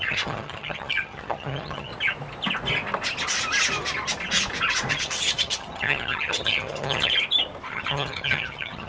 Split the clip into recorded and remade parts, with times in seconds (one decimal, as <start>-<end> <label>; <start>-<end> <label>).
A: 0.0-1.9 remade; 1.9-4.9 recorded; 4.9-7.1 remade; 7.1-7.7 recorded; 7.7-8.9 remade